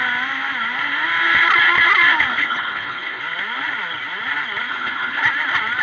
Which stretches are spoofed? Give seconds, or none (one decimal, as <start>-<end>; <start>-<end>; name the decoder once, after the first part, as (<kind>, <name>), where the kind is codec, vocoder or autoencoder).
2.4-3.2 (codec, HILCodec); 4.7-5.2